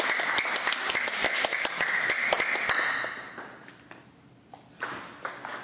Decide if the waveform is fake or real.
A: real